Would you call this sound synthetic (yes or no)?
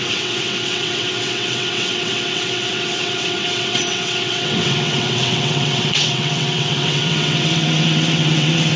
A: yes